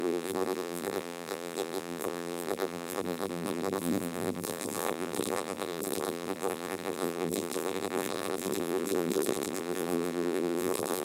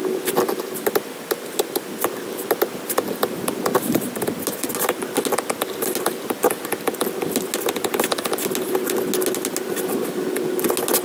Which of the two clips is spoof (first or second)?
first